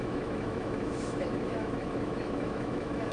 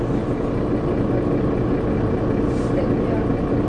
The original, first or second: second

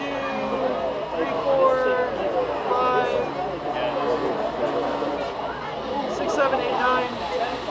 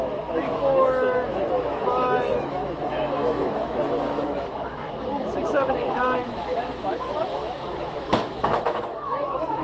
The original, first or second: first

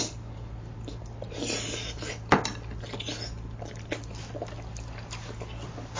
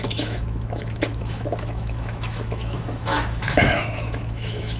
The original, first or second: first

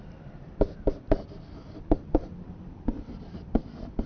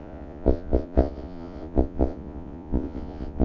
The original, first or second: first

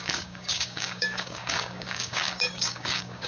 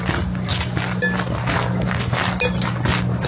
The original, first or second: second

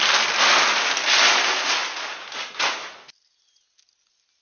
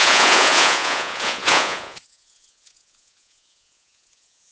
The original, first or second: first